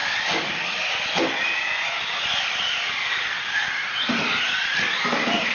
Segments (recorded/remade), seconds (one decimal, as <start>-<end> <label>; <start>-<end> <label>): 0.0-5.5 recorded